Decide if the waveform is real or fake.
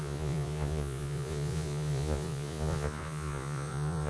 fake